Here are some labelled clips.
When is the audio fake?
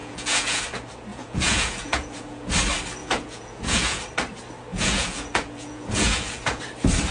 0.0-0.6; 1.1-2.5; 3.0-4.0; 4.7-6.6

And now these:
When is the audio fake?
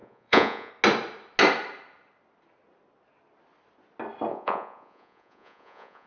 0.0-0.7; 4.3-6.1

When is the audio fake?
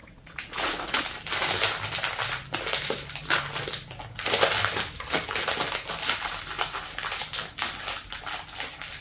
0.0-1.0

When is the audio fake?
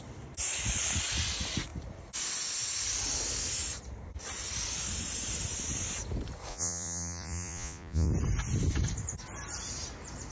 6.5-8.1